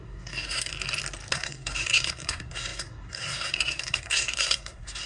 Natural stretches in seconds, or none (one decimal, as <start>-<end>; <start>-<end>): 0.7-1.3